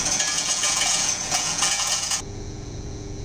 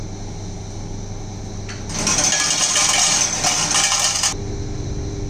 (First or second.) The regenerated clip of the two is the first